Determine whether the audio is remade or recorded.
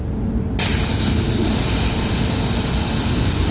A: recorded